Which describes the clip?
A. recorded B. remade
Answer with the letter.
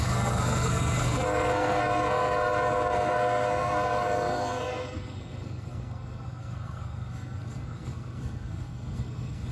B